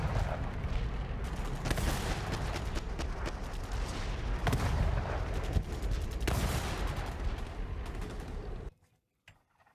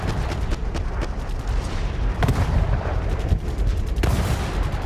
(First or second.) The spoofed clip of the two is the second